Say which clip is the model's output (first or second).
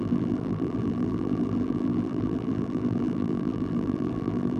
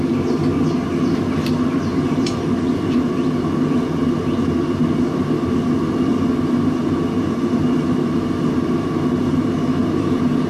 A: first